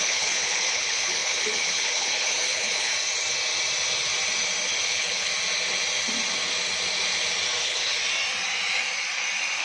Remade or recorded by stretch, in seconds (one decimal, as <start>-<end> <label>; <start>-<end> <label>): 0.0-2.9 remade; 2.9-4.8 recorded; 4.8-5.3 remade; 5.3-7.6 recorded; 7.6-8.0 remade; 8.0-9.6 recorded